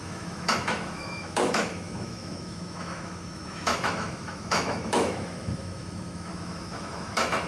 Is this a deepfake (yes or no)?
yes